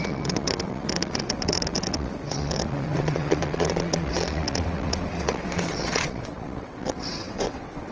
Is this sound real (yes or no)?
no